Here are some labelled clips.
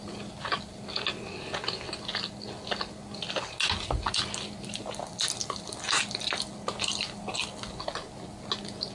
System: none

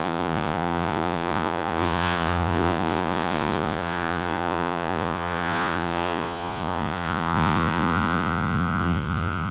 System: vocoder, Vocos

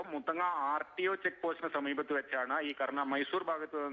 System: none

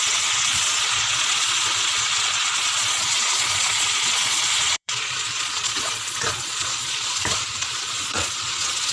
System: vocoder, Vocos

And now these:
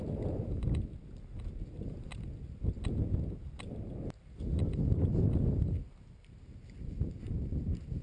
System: none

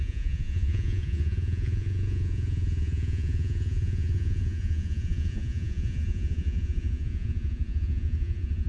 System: vocoder, Vocos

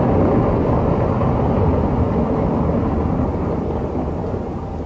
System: none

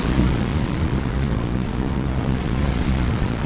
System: vocoder, Vocos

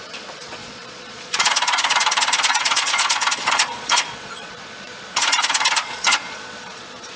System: vocoder, Vocos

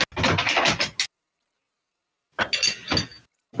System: none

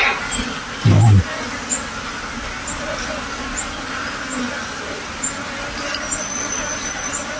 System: none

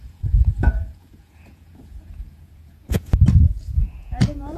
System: vocoder, Vocos